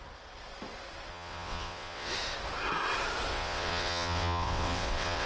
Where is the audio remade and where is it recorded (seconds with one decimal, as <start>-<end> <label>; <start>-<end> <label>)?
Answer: 0.0-1.1 recorded; 1.1-2.1 remade; 2.1-3.3 recorded; 3.3-5.3 remade